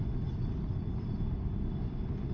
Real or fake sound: real